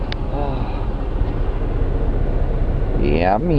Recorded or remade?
recorded